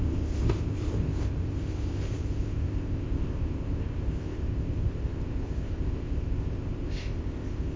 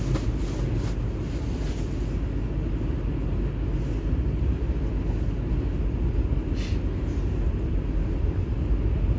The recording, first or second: second